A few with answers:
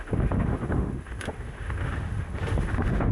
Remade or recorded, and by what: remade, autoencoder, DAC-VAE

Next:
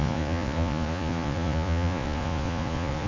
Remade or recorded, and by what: remade, vocoder, Vocos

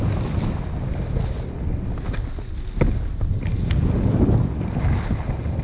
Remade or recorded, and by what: recorded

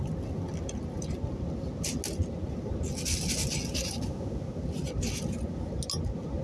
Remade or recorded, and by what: recorded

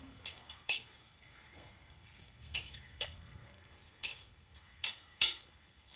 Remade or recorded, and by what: remade, codec, SNAC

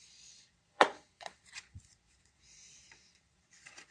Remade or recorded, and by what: remade, vocoder, Vocos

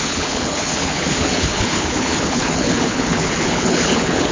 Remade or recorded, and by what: remade, codec, HILCodec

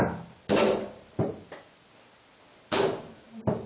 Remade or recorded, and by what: recorded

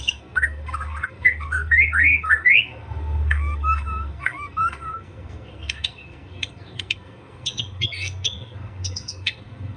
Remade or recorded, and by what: remade, codec, SNAC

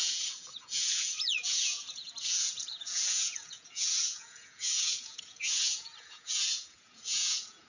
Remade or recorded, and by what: remade, vocoder, Vocos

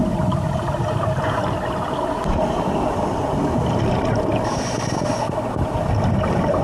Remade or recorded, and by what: recorded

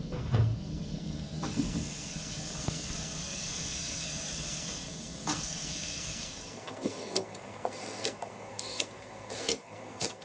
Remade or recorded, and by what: remade, codec, SNAC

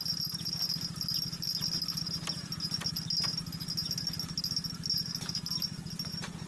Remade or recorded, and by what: recorded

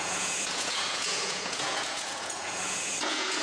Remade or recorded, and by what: remade, vocoder, Vocos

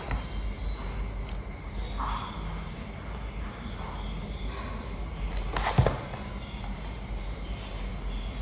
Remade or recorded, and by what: recorded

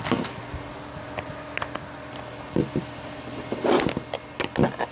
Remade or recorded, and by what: recorded